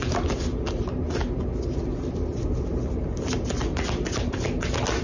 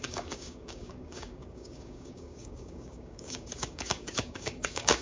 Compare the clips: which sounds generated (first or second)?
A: second